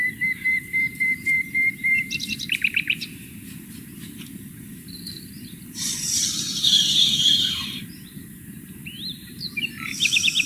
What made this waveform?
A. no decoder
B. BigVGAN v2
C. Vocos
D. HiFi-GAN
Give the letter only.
B